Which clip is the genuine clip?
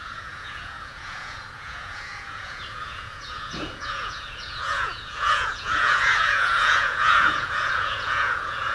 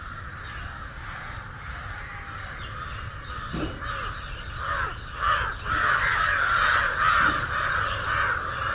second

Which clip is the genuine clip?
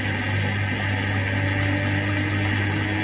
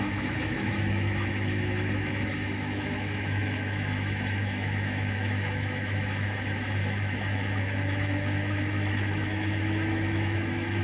first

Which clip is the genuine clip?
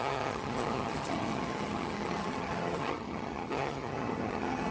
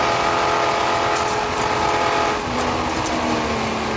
second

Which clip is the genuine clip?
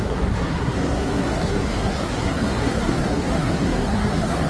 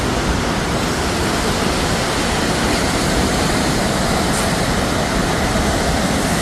second